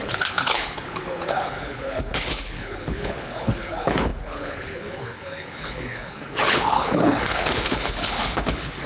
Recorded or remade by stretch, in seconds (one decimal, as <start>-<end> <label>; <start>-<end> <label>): 0.0-8.9 remade